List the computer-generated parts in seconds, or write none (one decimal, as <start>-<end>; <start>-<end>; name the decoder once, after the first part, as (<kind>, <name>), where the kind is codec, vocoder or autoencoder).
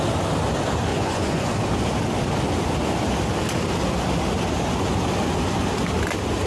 0.9-1.5 (vocoder, Vocos)